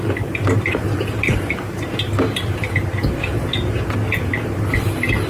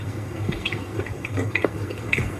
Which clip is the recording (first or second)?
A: first